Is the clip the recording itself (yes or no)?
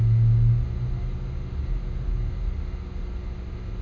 yes